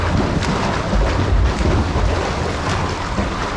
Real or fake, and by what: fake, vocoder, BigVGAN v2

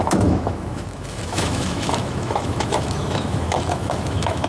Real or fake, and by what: fake, autoencoder, DAC-VAE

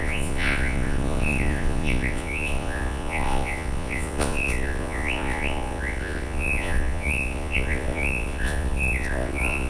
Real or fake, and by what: fake, vocoder, Vocos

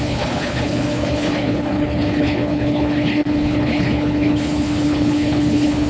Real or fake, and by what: fake, codec, HILCodec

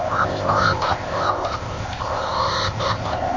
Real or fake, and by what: fake, codec, ZipCodec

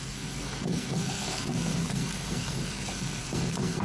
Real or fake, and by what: fake, codec, SNAC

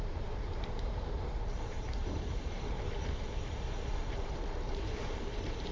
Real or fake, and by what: fake, vocoder, BigVGAN v2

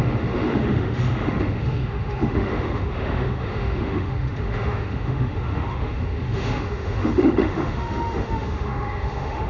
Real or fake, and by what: fake, autoencoder, DAC-VAE